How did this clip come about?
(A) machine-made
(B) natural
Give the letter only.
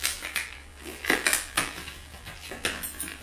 A